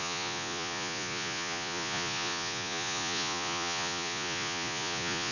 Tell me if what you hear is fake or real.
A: fake